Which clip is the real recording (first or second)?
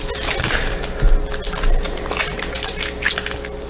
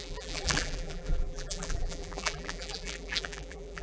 first